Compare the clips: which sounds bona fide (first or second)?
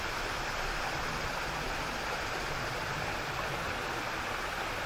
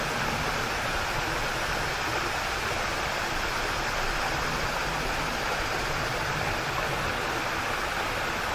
second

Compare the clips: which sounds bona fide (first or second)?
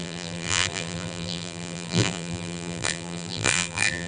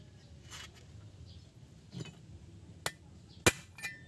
second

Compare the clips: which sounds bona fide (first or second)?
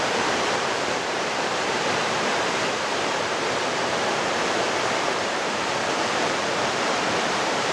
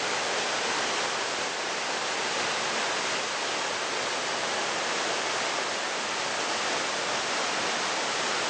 second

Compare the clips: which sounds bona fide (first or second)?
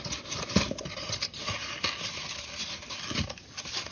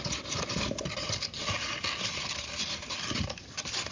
first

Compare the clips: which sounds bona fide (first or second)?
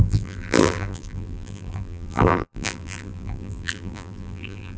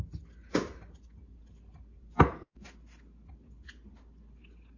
second